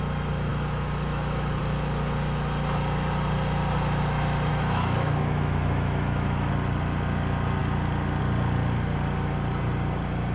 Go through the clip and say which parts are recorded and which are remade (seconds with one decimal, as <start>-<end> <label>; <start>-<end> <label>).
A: 0.0-0.5 recorded; 0.5-1.6 remade; 1.6-4.5 recorded; 4.5-6.5 remade; 6.5-10.3 recorded